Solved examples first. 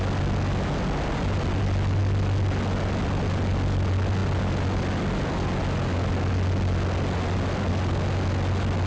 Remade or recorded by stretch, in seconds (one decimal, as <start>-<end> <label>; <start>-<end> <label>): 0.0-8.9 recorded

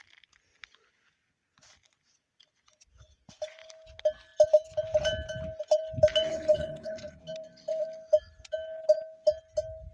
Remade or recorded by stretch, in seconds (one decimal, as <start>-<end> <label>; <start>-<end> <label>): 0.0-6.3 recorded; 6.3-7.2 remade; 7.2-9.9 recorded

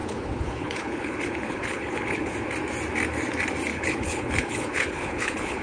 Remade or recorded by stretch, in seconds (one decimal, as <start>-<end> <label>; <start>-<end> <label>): 0.0-2.3 remade; 2.3-3.7 recorded; 3.7-5.6 remade

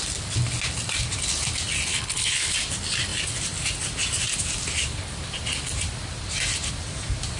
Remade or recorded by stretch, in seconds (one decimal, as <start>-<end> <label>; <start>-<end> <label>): 0.0-1.9 recorded; 1.9-2.5 remade; 2.5-7.4 recorded